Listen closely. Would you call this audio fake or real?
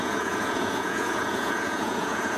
fake